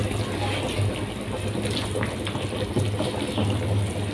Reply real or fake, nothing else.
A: real